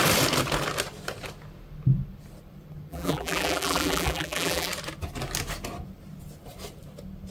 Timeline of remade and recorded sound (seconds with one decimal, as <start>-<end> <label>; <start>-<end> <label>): 0.0-2.9 recorded; 2.9-4.7 remade; 4.7-7.3 recorded